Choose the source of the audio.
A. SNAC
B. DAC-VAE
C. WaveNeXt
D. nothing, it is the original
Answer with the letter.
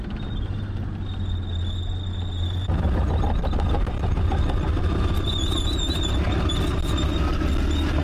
D